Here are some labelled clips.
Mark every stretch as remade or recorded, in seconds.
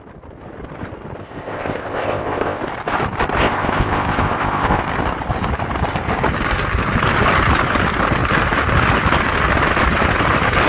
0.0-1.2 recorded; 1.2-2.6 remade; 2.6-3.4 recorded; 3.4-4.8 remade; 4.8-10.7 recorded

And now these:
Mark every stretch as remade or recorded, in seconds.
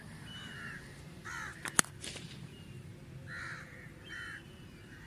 0.0-1.5 remade; 1.5-2.1 recorded; 2.1-2.9 remade; 2.9-3.6 recorded; 3.6-5.1 remade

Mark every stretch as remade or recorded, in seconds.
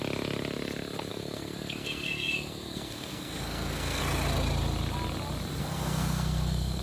0.0-1.1 recorded; 1.1-4.0 remade; 4.0-5.6 recorded; 5.6-6.8 remade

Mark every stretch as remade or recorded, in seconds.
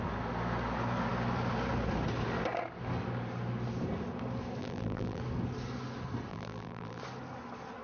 0.0-4.6 recorded; 4.6-5.2 remade; 5.2-6.3 recorded; 6.3-7.0 remade; 7.0-7.8 recorded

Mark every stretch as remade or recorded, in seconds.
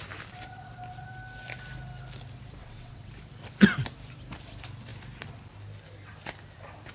0.0-2.6 recorded; 2.6-3.1 remade; 3.1-6.9 recorded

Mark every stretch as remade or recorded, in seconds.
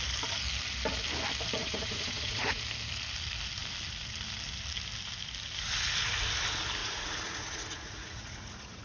0.0-1.6 recorded; 1.6-2.6 remade; 2.6-6.8 recorded; 6.8-8.8 remade